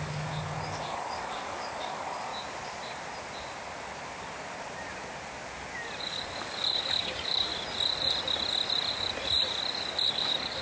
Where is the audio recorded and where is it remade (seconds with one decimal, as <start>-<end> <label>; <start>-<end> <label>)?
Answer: 0.0-2.3 remade; 2.3-6.0 recorded; 6.0-7.5 remade; 7.5-10.1 recorded; 10.1-10.6 remade